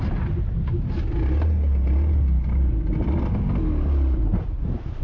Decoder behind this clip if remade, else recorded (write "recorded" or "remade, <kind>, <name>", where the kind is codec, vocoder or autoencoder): recorded